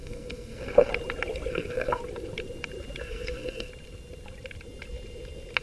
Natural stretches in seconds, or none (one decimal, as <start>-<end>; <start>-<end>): 0.9-1.5; 2.0-3.0; 3.7-5.6